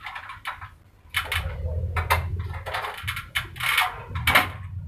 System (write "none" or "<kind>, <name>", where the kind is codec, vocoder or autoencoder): none